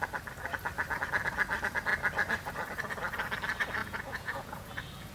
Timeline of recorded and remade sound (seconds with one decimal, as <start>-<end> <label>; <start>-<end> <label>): 0.0-3.8 recorded; 3.8-5.1 remade